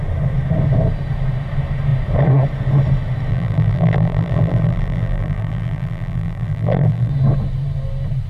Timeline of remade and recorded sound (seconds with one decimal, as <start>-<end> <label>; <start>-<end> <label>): 0.0-3.3 recorded; 3.3-7.1 remade; 7.1-8.3 recorded